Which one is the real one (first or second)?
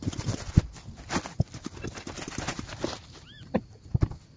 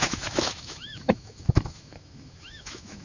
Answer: first